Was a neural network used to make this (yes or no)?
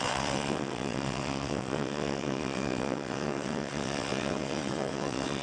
yes